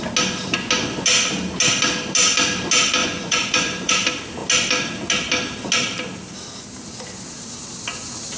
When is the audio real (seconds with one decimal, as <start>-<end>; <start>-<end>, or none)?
0.0-3.0; 3.9-8.4

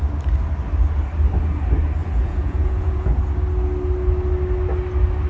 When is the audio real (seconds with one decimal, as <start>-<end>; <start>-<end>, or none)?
0.0-2.0; 3.1-5.3

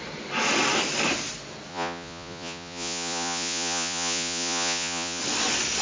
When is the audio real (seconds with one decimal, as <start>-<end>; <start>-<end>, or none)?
0.0-1.7; 5.2-5.8

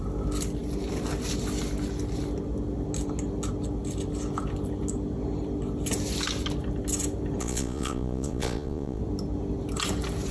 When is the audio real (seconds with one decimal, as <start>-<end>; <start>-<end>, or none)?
0.0-7.4; 9.0-10.3

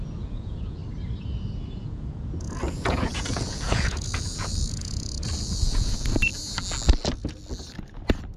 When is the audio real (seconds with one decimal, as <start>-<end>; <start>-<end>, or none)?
0.8-1.8; 6.3-8.4

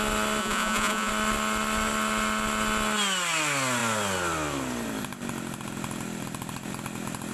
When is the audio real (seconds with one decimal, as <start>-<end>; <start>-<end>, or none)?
0.0-0.4; 1.1-7.3

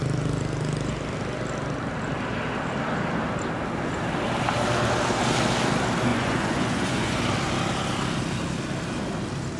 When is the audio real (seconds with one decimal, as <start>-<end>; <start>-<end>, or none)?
0.0-6.1; 7.2-9.6